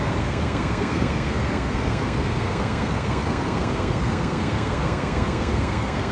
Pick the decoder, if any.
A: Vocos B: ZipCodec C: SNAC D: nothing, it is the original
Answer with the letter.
C